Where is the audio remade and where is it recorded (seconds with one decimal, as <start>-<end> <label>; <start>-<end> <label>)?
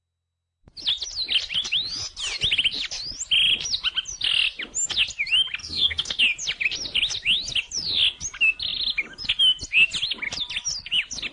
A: 0.0-5.6 recorded; 5.6-6.2 remade; 6.2-11.3 recorded